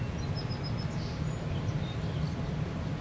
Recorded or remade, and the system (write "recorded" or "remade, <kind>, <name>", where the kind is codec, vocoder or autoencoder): recorded